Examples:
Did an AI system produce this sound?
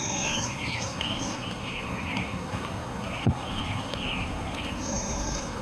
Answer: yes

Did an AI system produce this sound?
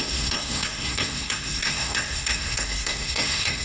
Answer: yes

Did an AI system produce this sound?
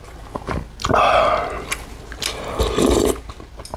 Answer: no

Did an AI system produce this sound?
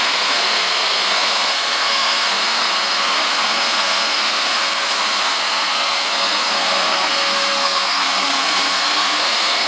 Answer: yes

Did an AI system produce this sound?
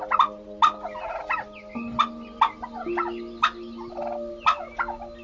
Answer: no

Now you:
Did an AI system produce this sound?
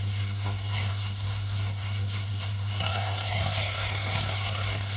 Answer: yes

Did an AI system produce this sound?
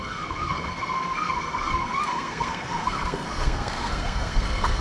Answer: yes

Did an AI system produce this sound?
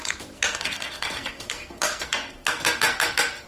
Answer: yes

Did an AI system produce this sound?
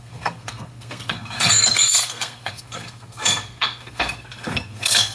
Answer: yes